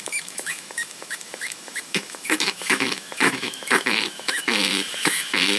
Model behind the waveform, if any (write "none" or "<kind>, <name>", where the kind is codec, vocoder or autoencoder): autoencoder, DAC-VAE